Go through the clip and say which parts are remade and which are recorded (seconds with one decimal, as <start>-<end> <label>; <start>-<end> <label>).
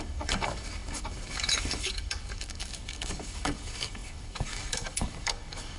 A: 0.0-5.8 remade